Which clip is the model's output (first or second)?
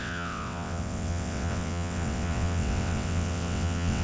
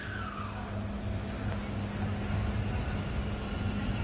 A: first